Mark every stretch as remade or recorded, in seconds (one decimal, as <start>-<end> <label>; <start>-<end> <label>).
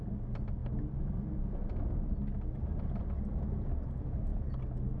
0.0-5.0 recorded